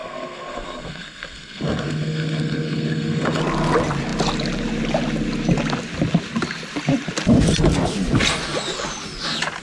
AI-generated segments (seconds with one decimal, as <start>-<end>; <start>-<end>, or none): 0.0-3.4